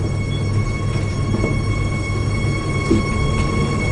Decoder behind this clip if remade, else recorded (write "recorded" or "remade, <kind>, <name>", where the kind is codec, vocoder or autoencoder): recorded